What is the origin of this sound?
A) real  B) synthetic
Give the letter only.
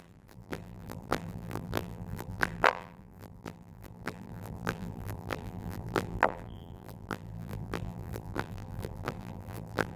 B